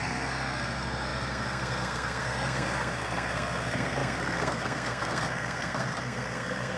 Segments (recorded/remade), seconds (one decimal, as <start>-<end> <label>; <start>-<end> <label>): 0.0-6.8 remade